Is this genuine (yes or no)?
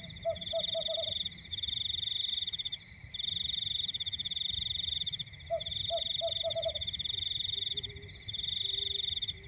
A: yes